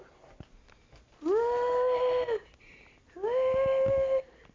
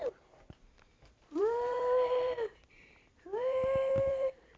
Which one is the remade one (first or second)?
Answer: second